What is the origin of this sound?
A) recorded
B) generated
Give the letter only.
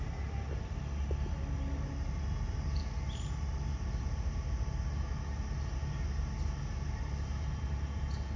A